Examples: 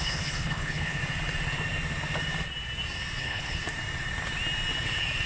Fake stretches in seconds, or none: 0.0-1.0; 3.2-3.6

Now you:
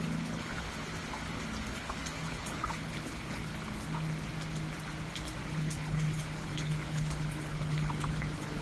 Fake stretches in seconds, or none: 0.0-0.9; 1.7-3.5; 5.5-8.6

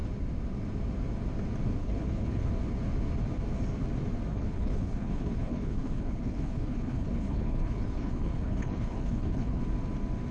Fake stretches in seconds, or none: 1.8-2.5; 4.3-9.6

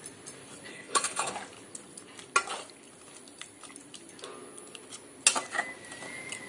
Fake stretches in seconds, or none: 0.7-1.3

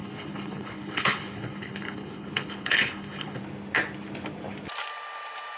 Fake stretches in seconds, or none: 0.0-3.4

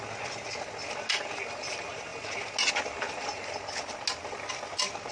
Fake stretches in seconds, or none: none

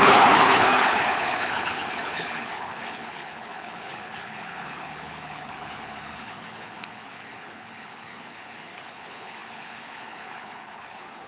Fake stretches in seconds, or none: 0.0-11.3

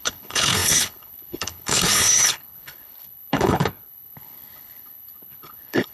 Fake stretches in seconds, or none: 0.0-5.9